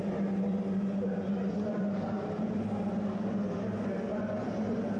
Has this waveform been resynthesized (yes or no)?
no